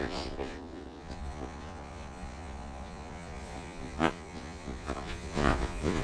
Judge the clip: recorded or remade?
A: remade